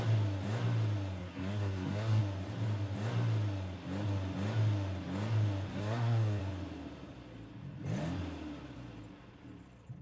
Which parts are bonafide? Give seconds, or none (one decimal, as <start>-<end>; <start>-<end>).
0.0-1.2; 2.2-5.7; 6.4-10.0